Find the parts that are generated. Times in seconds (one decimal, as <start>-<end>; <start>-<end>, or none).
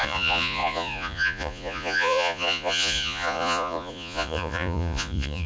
0.0-5.5